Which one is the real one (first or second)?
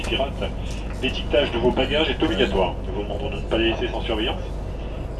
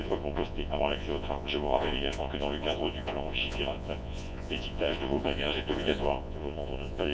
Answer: first